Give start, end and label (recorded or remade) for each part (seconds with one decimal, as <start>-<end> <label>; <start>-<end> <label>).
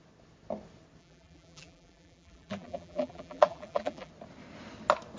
0.0-1.0 recorded; 1.0-4.1 remade; 4.1-5.2 recorded